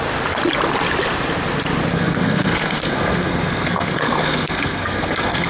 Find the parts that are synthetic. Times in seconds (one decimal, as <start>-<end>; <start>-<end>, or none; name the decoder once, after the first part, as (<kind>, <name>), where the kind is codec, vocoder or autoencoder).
1.9-5.5 (codec, SNAC)